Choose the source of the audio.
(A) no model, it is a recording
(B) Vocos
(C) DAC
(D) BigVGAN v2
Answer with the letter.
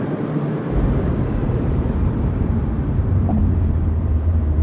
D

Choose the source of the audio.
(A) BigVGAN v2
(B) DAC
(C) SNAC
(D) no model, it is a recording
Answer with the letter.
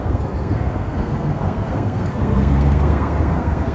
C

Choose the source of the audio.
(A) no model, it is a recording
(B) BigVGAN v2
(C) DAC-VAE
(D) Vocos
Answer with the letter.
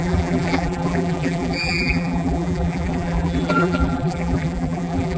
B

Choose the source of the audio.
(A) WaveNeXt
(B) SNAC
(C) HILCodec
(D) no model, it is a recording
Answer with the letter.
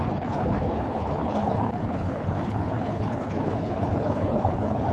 C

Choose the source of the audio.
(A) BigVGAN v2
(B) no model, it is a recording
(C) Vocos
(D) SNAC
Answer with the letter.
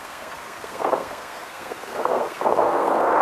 D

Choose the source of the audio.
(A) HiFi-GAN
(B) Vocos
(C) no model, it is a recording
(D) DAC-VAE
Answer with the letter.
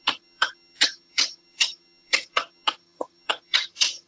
A